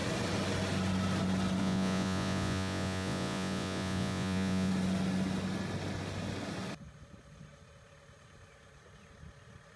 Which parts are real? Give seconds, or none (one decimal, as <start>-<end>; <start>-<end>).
0.0-1.6; 4.7-9.8